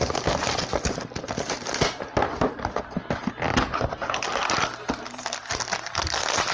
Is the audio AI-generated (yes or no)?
no